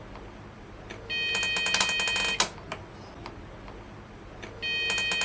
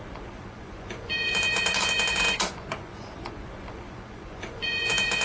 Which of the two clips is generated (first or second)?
second